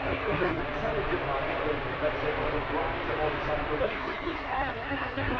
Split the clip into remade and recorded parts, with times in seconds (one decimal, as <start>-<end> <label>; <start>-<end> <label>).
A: 0.0-0.6 remade; 0.6-3.8 recorded; 3.8-5.4 remade

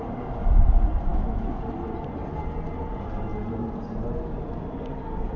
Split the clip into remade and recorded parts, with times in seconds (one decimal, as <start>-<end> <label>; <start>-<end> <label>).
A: 0.0-1.1 recorded; 1.1-1.6 remade; 1.6-5.4 recorded

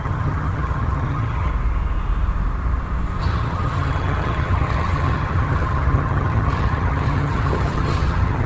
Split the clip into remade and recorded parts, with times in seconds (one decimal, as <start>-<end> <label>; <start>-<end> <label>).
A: 0.0-1.5 remade; 1.5-3.2 recorded; 3.2-8.5 remade